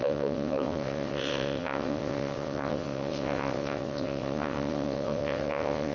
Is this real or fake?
fake